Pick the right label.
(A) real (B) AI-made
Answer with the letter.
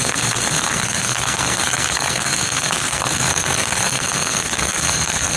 B